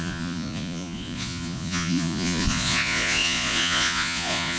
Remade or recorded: remade